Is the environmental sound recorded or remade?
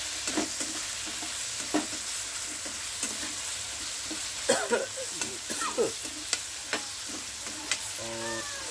recorded